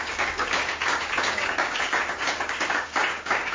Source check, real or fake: fake